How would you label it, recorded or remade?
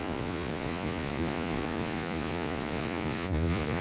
remade